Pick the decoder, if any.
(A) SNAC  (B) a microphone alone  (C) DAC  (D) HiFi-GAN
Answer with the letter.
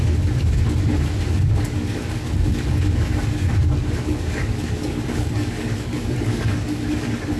C